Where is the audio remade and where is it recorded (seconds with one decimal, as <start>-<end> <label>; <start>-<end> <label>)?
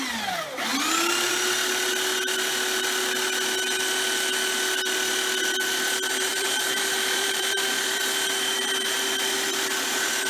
0.0-6.3 recorded; 6.3-8.0 remade; 8.0-10.3 recorded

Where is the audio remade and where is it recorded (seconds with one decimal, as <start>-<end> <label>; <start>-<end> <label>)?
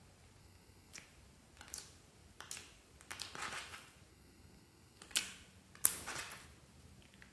0.0-0.4 recorded; 0.4-0.9 remade; 0.9-4.1 recorded; 4.1-5.0 remade; 5.0-7.3 recorded